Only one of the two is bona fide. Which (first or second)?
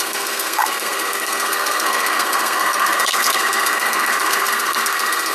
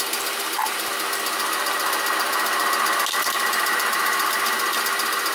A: second